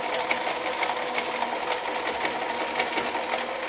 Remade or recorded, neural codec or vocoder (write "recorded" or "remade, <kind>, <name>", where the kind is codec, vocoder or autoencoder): recorded